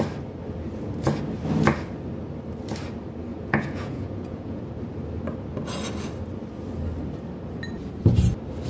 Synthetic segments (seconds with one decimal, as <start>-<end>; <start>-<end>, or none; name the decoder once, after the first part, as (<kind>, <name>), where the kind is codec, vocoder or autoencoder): 3.3-4.6 (vocoder, Vocos)